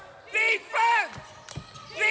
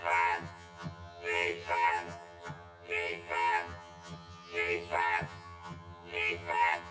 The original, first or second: first